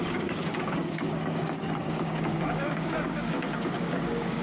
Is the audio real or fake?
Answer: fake